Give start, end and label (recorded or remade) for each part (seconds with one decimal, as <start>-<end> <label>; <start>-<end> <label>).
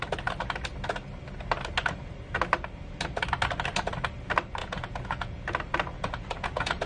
0.0-4.6 recorded; 4.6-5.4 remade; 5.4-5.9 recorded; 5.9-6.9 remade